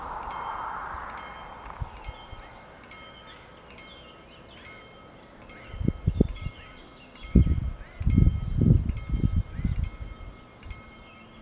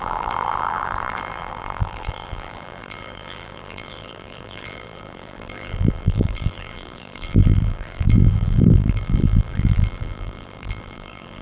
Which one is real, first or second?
first